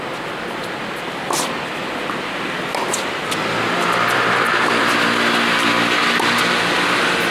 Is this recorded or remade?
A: recorded